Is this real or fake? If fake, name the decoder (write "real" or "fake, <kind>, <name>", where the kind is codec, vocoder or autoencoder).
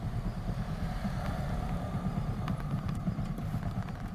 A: fake, vocoder, BigVGAN v2